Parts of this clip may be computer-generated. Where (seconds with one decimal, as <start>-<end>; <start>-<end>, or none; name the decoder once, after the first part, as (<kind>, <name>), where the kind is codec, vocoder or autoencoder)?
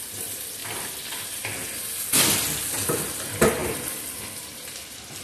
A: none